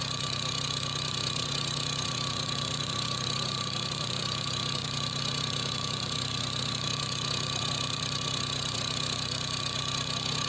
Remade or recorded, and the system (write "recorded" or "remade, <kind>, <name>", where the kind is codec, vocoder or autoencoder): remade, vocoder, Vocos